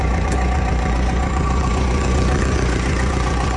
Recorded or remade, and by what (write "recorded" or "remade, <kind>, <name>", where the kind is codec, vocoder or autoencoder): remade, vocoder, Vocos